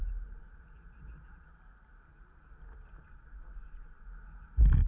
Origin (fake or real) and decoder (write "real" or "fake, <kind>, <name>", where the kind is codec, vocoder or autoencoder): real